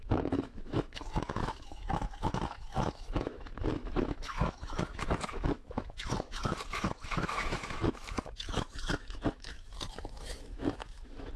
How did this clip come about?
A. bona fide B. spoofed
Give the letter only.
B